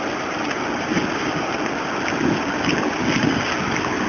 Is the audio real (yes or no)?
yes